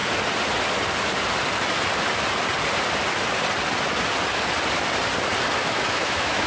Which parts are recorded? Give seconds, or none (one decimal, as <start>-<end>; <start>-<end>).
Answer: 0.0-5.6